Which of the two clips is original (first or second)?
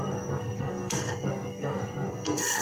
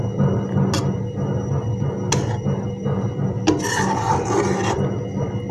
second